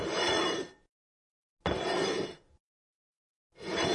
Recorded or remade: recorded